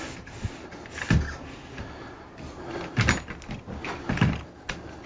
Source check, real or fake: real